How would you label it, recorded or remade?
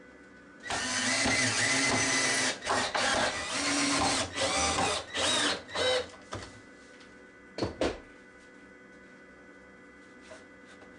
recorded